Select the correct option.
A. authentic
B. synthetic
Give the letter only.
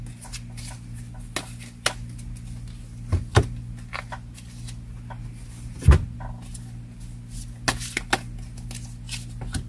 A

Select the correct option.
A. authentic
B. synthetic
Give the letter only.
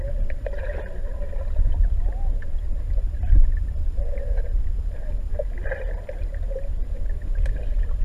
A